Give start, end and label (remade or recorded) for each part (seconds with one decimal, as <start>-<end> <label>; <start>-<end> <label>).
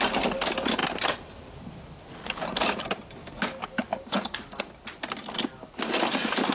0.0-3.2 recorded; 3.2-4.6 remade; 4.6-6.5 recorded